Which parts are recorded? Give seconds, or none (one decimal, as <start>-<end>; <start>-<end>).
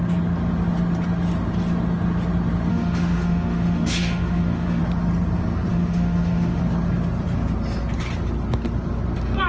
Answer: 0.0-2.7; 4.8-5.7; 6.6-9.5